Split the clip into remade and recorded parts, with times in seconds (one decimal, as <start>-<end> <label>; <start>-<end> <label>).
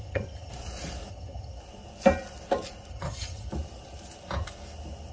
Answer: 0.0-0.5 remade; 0.5-1.1 recorded; 1.1-1.6 remade; 1.6-2.9 recorded; 2.9-3.5 remade; 3.5-5.1 recorded